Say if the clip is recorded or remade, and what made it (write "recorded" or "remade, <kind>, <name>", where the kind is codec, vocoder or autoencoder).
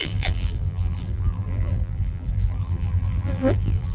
remade, vocoder, BigVGAN v2